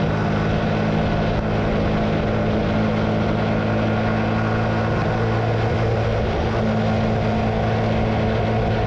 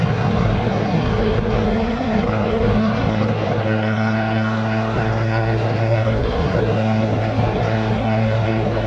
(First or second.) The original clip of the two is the first